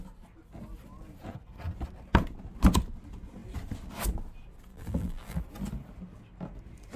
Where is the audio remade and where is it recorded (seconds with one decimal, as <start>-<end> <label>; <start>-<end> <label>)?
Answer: 0.0-4.7 recorded; 4.7-5.4 remade; 5.4-7.0 recorded